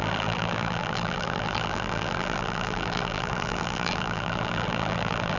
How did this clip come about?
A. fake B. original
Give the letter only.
A